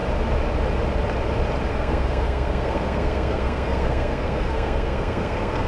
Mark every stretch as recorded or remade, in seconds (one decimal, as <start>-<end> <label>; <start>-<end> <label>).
0.0-1.7 recorded; 1.7-5.7 remade